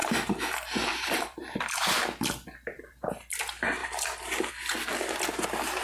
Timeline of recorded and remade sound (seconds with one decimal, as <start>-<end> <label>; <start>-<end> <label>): 0.0-3.1 remade; 3.1-3.8 recorded; 3.8-4.5 remade; 4.5-5.8 recorded